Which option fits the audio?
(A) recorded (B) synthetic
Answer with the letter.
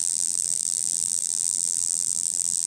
B